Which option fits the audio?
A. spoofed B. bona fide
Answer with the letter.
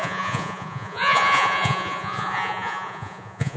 A